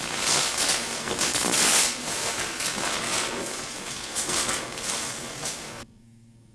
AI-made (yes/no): yes